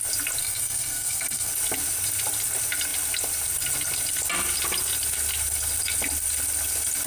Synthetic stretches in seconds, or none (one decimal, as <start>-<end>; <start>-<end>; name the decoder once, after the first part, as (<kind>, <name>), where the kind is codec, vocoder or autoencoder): 0.4-1.5 (codec, SNAC)